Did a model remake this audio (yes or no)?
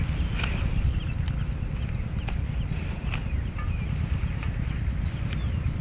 no